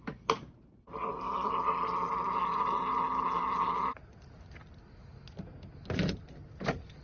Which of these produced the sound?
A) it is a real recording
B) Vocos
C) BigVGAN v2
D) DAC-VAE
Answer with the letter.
A